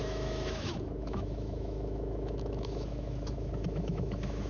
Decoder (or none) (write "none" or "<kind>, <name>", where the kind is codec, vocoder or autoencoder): autoencoder, DAC-VAE